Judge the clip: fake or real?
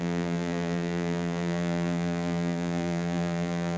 fake